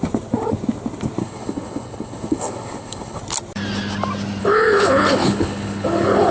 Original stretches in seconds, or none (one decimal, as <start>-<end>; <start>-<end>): 0.0-1.2; 3.2-4.4